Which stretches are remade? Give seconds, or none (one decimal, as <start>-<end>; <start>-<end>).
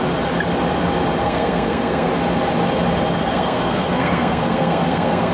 1.2-2.1; 3.2-5.3